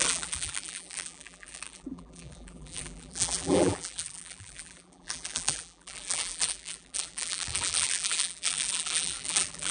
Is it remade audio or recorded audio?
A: remade